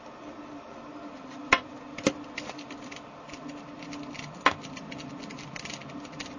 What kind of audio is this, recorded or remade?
recorded